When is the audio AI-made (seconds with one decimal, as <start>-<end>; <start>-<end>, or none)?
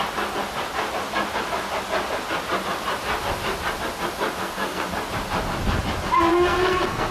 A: 4.4-4.9; 6.3-7.1